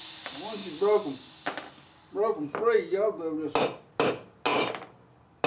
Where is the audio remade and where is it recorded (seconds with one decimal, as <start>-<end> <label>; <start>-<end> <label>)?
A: 0.0-5.5 recorded